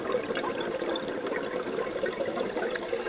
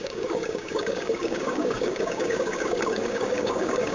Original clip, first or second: first